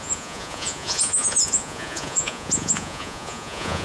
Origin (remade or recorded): remade